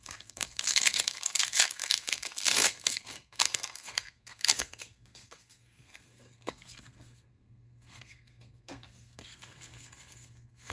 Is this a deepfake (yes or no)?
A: yes